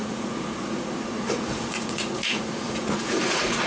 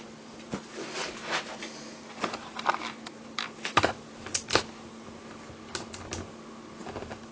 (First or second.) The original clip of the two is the second